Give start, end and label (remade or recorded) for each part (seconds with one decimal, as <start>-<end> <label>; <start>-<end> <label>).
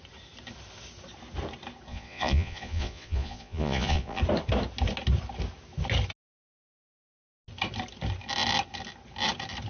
0.0-1.9 recorded; 1.9-4.2 remade; 4.2-9.7 recorded